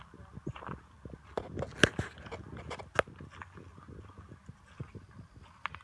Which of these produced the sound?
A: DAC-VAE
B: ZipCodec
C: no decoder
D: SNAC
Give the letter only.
C